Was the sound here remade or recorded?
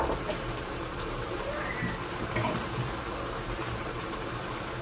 remade